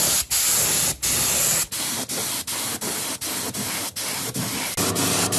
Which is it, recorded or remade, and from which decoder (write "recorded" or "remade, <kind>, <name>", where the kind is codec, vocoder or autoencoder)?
recorded